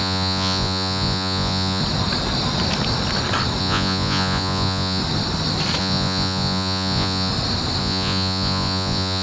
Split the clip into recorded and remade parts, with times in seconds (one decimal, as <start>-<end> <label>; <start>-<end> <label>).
0.0-1.8 remade; 1.8-3.6 recorded; 3.6-5.0 remade; 5.0-5.8 recorded; 5.8-7.3 remade; 7.3-7.8 recorded; 7.8-9.2 remade